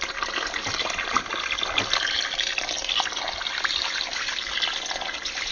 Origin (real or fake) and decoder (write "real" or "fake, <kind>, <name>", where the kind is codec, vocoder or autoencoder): real